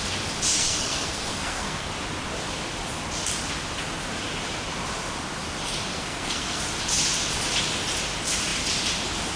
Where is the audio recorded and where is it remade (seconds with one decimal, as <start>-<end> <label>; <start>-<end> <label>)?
0.0-0.5 recorded; 0.5-1.9 remade; 1.9-5.9 recorded; 5.9-6.6 remade; 6.6-9.4 recorded